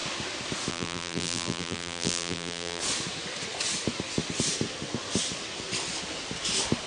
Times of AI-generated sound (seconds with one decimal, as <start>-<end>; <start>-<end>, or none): 0.7-2.8

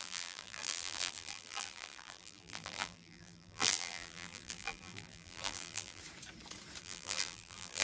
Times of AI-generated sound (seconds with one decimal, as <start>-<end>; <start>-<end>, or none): 0.0-6.0; 6.8-7.8

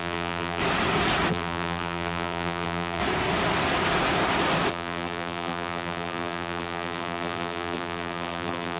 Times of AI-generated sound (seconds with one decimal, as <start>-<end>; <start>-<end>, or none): 0.0-0.6; 1.3-3.0; 4.7-8.8

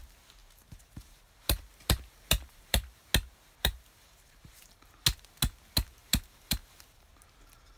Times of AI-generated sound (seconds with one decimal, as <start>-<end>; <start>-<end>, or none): 0.4-3.1; 3.6-4.9; 6.0-7.1